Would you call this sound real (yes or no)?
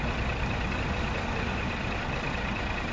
yes